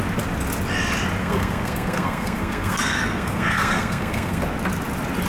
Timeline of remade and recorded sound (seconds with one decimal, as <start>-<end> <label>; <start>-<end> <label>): 0.0-1.2 recorded; 1.2-4.4 remade; 4.4-5.3 recorded